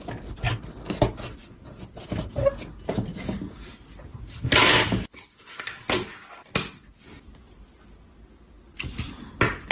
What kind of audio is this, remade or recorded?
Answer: recorded